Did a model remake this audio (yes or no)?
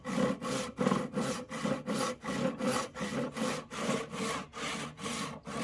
no